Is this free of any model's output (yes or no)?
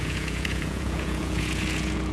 no